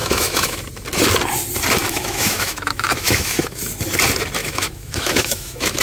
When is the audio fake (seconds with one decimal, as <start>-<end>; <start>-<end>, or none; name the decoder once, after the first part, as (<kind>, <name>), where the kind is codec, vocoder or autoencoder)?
0.0-0.6 (autoencoder, DAC-VAE); 1.8-3.6; 4.4-5.8